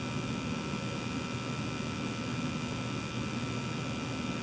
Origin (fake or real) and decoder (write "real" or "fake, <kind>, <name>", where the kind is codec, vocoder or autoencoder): real